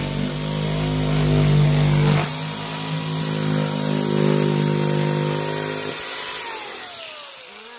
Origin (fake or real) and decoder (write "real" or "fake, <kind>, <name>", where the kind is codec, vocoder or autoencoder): real